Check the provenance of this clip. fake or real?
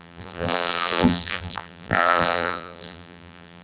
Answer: fake